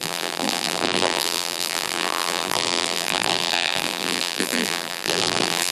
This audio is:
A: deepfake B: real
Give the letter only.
A